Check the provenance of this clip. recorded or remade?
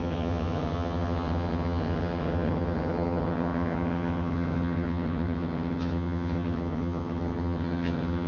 remade